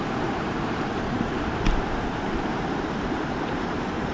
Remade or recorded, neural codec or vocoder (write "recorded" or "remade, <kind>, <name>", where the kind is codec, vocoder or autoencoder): remade, vocoder, BigVGAN v2